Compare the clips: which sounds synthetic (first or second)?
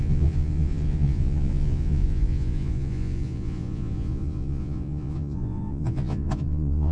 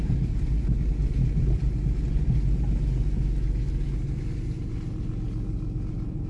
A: first